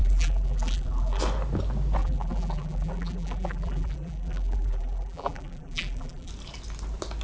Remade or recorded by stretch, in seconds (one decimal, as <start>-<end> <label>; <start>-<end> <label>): 0.0-1.2 remade; 1.2-2.0 recorded; 2.0-6.3 remade; 6.3-7.2 recorded